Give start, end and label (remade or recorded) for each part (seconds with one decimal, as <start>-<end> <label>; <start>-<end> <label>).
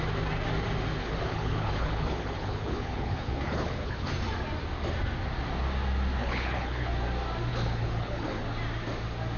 0.0-1.0 recorded; 1.0-4.1 remade; 4.1-6.2 recorded; 6.2-6.9 remade; 6.9-7.5 recorded; 7.5-8.4 remade; 8.4-9.4 recorded